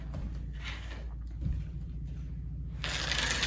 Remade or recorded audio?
recorded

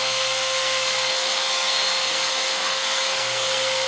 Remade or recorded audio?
remade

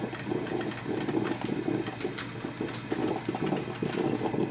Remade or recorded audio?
recorded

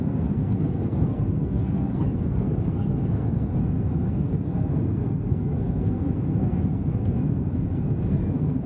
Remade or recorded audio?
remade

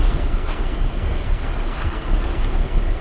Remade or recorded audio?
remade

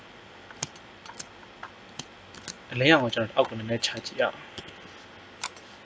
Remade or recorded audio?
recorded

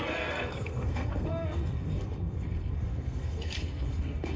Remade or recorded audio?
remade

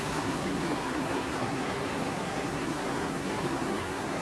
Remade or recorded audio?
remade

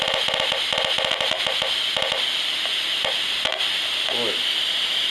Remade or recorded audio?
recorded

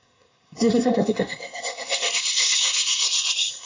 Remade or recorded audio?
remade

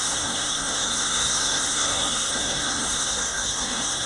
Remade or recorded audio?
remade